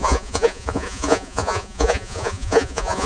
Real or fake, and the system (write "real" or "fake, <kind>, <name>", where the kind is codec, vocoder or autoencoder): fake, vocoder, Vocos